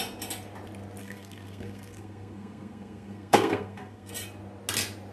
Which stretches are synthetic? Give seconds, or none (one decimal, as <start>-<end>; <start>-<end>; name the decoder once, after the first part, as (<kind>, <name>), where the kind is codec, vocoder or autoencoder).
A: 1.0-4.1 (codec, SNAC)